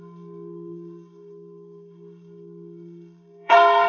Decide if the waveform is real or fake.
fake